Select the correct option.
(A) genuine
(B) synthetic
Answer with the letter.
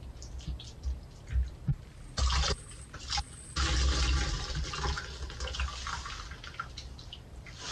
A